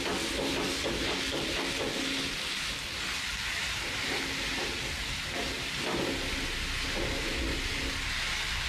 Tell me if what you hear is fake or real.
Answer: real